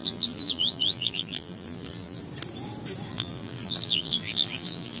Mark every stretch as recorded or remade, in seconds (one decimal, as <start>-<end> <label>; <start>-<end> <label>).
0.0-2.2 remade; 2.2-3.1 recorded; 3.1-5.0 remade